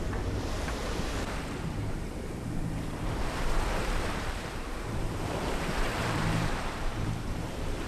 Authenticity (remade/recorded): remade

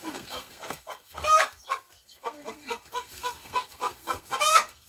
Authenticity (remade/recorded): remade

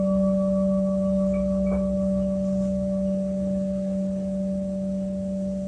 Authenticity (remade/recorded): recorded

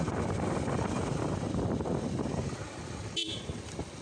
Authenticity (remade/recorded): recorded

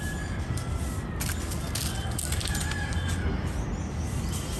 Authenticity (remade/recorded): recorded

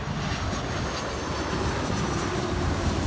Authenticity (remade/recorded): recorded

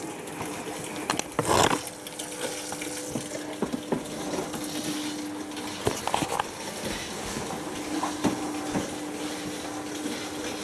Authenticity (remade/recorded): recorded